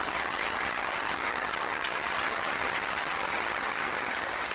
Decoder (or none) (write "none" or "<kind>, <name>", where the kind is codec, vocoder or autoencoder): vocoder, HiFi-GAN